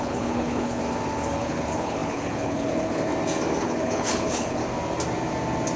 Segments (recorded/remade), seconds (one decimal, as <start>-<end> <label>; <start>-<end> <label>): 0.0-0.8 remade; 0.8-1.4 recorded; 1.4-3.1 remade; 3.1-3.6 recorded; 3.6-4.6 remade; 4.6-5.8 recorded

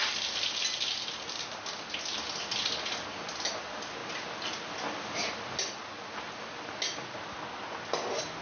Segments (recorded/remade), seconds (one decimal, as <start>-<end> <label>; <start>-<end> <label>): 0.0-8.4 recorded

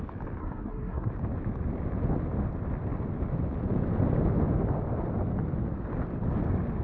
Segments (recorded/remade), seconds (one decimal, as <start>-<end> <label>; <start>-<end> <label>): 0.0-0.4 recorded; 0.4-1.1 remade; 1.1-6.8 recorded